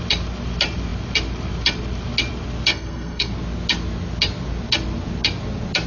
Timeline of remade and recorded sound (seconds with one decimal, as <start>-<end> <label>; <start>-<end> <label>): 0.0-2.7 recorded; 2.7-3.3 remade; 3.3-5.9 recorded